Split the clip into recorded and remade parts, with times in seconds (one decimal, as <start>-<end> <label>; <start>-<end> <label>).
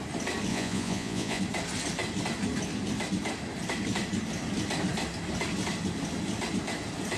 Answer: 0.0-0.5 recorded; 0.5-1.4 remade; 1.4-7.2 recorded